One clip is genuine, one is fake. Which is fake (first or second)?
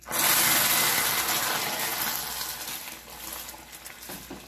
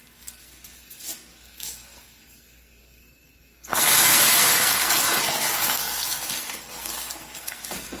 second